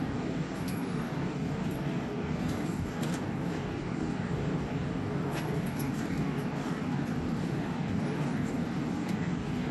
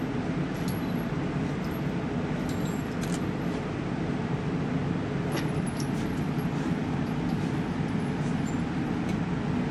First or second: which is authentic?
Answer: second